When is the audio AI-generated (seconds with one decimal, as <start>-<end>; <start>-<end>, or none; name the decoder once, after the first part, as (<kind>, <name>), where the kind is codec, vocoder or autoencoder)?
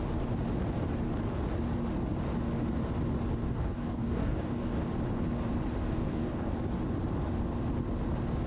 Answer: 3.4-4.6 (codec, DAC); 5.8-6.5